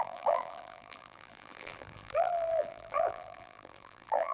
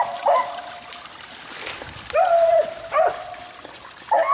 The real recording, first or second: second